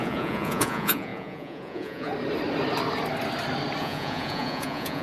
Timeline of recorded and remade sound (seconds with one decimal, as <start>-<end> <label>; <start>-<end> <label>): 0.0-2.1 remade; 2.1-3.8 recorded; 3.8-5.0 remade